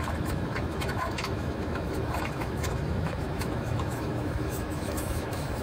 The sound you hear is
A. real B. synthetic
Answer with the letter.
B